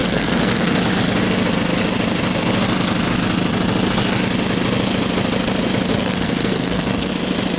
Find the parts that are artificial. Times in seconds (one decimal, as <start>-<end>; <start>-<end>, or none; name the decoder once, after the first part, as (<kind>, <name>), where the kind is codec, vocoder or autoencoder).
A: 0.0-0.8 (codec, SNAC); 5.9-7.1